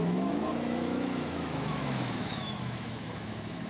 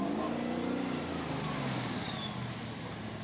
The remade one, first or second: first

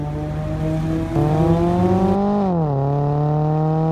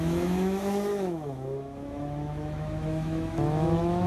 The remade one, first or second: second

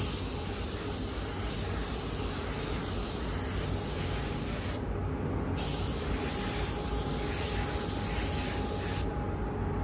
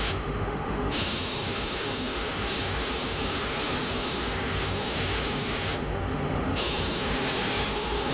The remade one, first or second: second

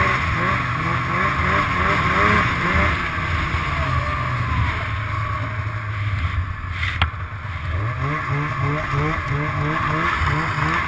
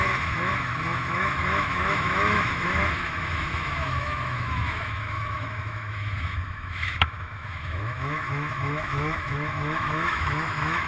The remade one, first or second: second